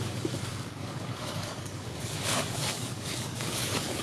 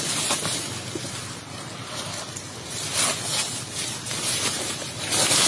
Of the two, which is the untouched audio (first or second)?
second